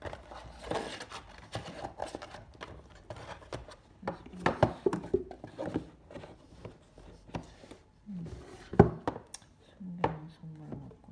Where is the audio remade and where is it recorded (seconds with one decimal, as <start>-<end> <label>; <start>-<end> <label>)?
0.0-11.1 recorded